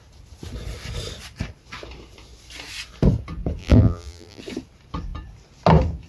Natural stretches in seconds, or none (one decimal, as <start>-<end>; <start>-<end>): 0.0-3.6; 4.4-6.1